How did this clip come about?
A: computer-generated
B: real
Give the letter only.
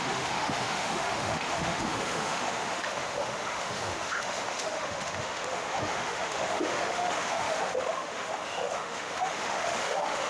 A